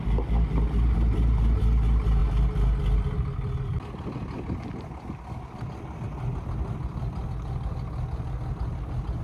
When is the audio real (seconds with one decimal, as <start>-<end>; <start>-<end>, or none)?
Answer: 0.0-9.2